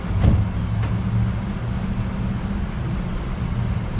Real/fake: real